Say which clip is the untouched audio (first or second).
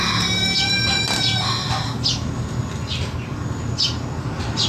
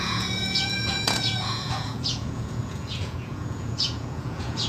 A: first